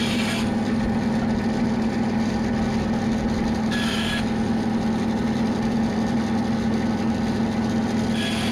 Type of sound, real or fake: real